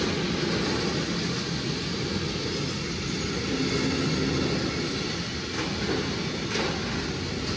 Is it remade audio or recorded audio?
recorded